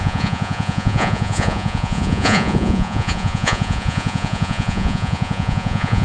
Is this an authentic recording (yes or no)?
no